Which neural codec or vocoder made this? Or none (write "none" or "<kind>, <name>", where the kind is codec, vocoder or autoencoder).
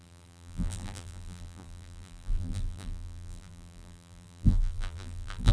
vocoder, BigVGAN v2